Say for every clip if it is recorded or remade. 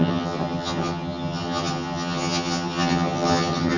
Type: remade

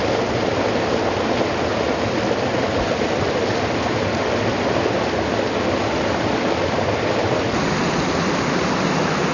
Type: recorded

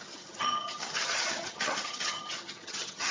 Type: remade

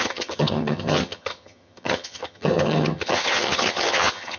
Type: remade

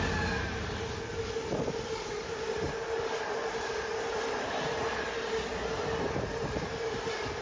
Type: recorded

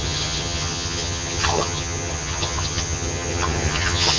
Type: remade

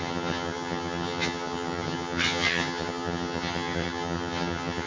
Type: remade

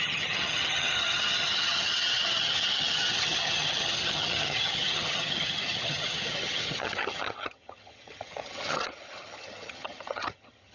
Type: remade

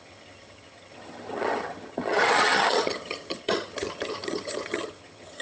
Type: remade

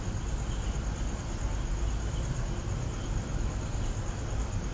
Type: recorded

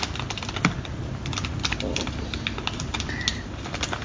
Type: recorded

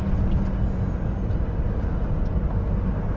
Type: recorded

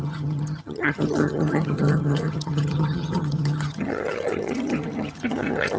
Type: remade